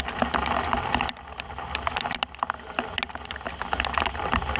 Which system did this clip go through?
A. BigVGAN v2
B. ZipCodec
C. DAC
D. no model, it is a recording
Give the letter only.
D